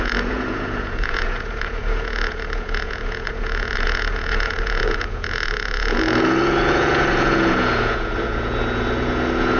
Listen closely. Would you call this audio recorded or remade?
remade